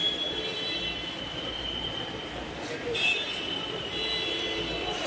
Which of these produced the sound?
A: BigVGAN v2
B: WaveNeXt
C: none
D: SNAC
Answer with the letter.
A